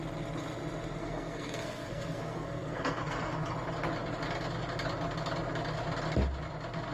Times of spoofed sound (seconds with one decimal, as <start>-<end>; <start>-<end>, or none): 1.0-3.3